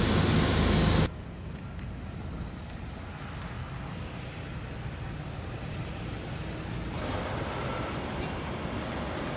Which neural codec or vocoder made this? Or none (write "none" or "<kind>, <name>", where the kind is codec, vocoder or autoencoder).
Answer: none